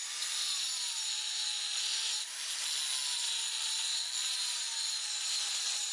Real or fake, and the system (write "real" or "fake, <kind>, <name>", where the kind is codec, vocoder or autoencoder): real